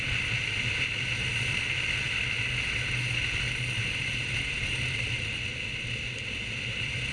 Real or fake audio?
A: real